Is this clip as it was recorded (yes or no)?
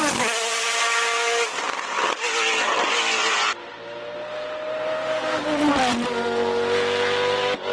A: yes